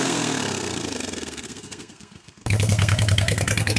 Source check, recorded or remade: remade